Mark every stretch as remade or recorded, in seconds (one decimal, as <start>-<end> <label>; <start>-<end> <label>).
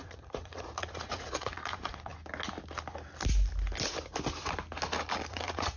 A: 0.0-2.1 remade; 2.1-5.3 recorded; 5.3-5.8 remade